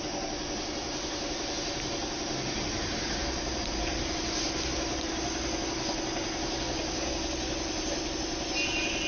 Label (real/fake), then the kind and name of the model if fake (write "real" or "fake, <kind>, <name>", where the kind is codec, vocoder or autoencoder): real